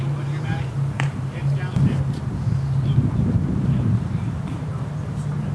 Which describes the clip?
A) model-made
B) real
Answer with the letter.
A